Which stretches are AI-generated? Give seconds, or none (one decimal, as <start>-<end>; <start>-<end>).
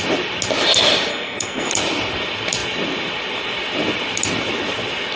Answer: 1.1-1.7